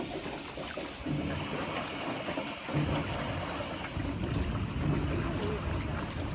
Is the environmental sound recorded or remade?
recorded